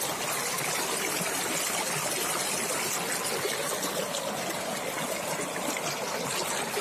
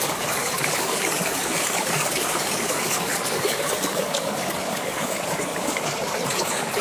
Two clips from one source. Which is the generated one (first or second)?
second